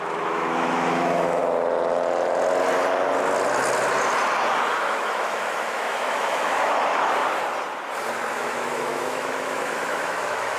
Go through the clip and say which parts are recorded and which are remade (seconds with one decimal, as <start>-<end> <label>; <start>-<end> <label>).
0.0-1.4 remade; 1.4-4.8 recorded; 4.8-7.2 remade; 7.2-8.3 recorded; 8.3-10.6 remade